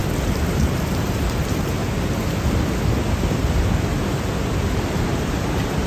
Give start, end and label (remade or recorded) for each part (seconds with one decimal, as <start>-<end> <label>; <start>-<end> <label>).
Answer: 0.0-1.8 remade; 1.8-4.5 recorded; 4.5-5.9 remade